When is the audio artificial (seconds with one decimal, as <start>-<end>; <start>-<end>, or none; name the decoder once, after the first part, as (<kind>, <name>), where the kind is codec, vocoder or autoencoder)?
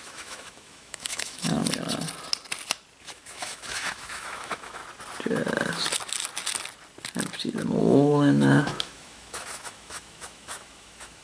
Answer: 0.0-1.6 (autoencoder, DAC-VAE); 3.0-4.8; 7.8-11.2